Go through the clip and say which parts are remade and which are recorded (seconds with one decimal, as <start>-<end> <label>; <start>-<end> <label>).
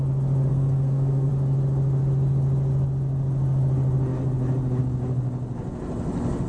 0.0-0.5 recorded; 0.5-1.3 remade; 1.3-6.5 recorded